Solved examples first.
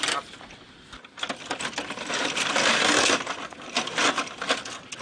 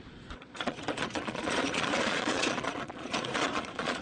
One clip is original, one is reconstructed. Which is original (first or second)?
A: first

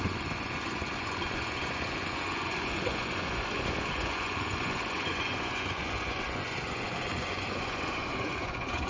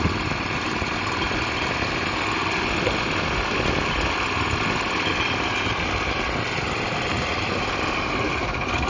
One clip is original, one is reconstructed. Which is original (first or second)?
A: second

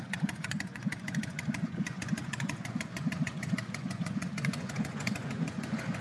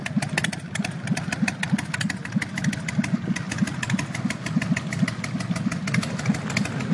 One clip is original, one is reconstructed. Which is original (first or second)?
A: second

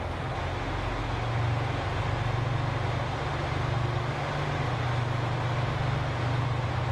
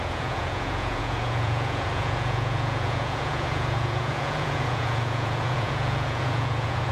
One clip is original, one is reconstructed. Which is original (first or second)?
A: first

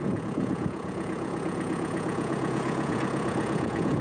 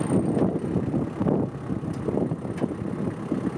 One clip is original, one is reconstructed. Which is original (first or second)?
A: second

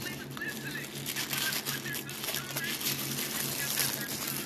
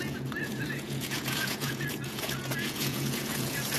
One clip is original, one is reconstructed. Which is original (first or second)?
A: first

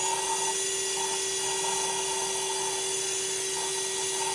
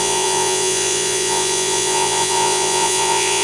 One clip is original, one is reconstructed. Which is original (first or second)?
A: first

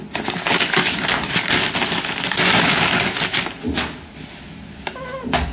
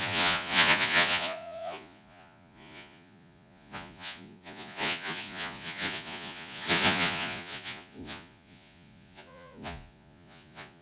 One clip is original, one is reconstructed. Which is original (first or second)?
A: first